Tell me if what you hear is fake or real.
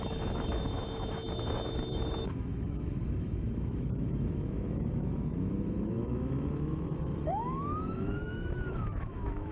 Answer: fake